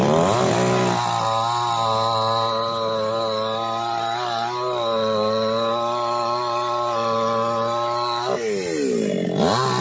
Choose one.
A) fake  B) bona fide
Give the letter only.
B